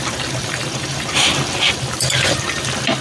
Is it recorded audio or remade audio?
remade